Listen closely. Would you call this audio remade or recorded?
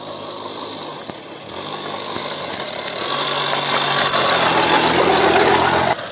recorded